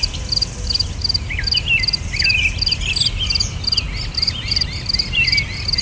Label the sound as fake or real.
real